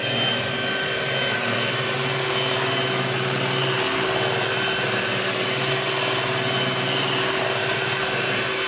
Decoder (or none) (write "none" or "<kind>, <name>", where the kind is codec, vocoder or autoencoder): none